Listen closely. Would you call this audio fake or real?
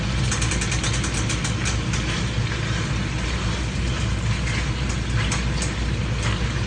real